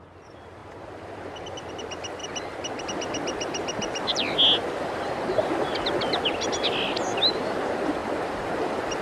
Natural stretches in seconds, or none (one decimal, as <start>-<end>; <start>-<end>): 0.0-9.0